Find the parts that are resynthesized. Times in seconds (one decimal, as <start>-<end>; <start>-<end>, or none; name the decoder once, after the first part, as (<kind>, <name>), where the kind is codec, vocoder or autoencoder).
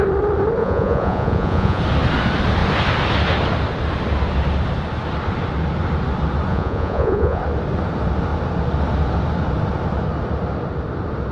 0.6-1.8 (vocoder, Vocos); 6.5-7.4